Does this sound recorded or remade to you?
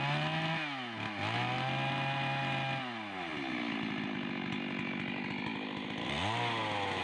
recorded